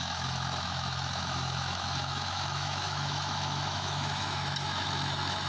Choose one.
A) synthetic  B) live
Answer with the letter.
A